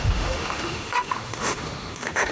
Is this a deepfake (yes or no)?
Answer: yes